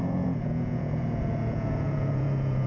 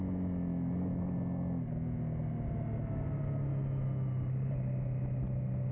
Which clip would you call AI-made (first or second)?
first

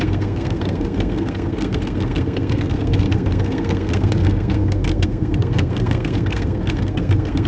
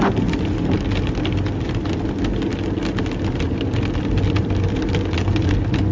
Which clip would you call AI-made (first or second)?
first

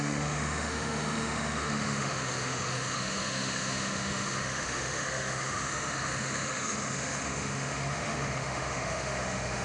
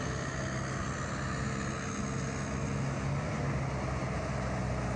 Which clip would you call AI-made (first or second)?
first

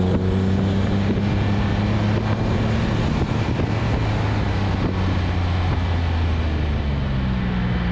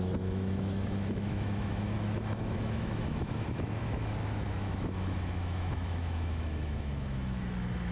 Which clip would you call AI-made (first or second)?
second